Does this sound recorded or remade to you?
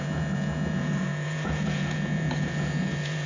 remade